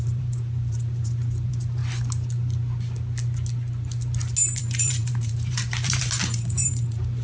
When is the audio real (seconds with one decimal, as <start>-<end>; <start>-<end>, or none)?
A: 1.8-4.6